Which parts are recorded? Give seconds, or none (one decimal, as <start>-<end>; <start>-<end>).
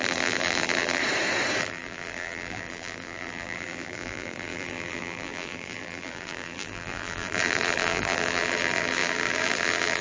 1.0-1.6